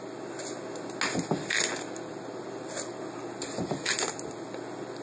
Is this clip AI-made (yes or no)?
no